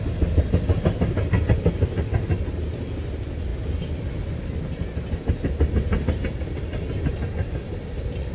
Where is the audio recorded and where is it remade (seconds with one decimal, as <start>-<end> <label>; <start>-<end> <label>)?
0.0-8.3 recorded